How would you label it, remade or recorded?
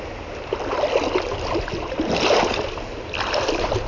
recorded